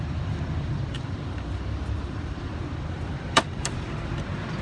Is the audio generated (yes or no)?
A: yes